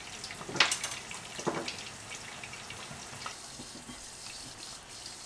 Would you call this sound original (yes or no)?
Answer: yes